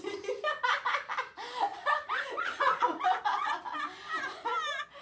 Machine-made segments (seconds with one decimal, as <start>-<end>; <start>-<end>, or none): 1.7-3.6